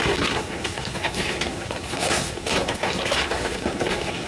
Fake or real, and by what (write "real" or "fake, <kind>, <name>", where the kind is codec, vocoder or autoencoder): fake, codec, SNAC